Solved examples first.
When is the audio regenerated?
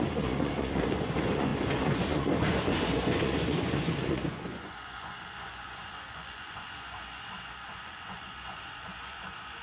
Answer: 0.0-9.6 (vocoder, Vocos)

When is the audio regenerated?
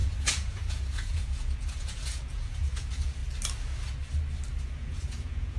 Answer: 0.0-3.2 (vocoder, Vocos); 4.6-5.6